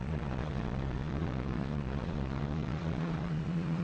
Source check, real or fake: fake